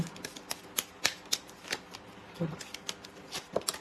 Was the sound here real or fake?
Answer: real